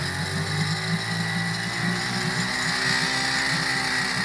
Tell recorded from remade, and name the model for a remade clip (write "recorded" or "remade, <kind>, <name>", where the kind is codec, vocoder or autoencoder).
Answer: recorded